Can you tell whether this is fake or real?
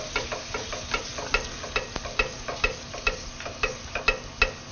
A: real